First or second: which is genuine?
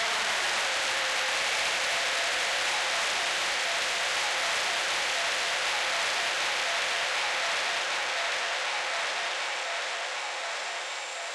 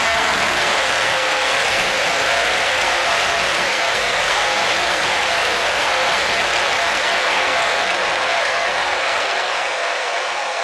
first